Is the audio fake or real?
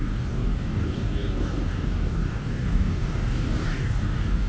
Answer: fake